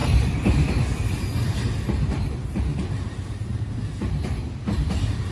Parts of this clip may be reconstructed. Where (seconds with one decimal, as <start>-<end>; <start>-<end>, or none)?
0.0-0.7; 2.4-3.2